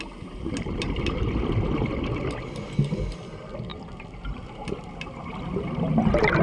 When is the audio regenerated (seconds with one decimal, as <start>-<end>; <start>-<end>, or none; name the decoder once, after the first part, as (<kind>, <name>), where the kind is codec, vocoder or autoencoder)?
none

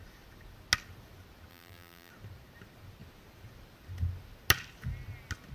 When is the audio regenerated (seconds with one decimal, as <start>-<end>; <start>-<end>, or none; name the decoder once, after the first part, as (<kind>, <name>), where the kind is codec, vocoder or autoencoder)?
1.5-2.1 (vocoder, BigVGAN v2)

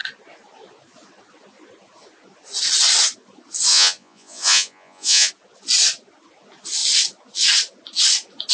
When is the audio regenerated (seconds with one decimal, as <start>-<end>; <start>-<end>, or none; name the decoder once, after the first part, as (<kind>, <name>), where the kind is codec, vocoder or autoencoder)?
3.7-5.3 (vocoder, Vocos)

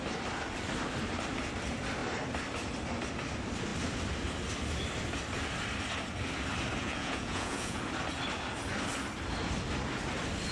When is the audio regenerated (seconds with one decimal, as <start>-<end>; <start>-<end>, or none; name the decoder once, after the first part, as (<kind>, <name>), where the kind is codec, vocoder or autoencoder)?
6.8-7.8 (vocoder, Vocos)

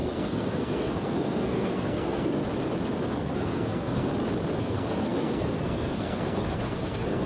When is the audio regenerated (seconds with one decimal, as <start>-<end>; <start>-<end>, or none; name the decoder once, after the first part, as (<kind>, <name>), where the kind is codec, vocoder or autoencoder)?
0.0-2.4 (codec, SNAC); 3.1-4.1; 4.6-7.3

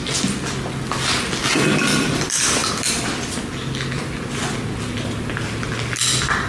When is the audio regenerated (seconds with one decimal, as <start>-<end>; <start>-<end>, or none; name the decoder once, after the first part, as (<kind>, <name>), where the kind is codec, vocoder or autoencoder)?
none

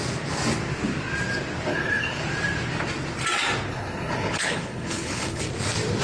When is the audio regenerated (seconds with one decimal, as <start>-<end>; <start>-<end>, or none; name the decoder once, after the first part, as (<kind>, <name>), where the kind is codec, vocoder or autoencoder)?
1.7-2.2 (codec, HILCodec); 3.7-5.4

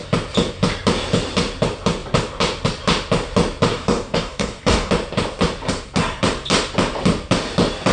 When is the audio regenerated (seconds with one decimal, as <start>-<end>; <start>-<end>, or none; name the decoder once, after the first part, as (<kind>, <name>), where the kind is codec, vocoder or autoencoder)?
3.7-4.9 (codec, DAC)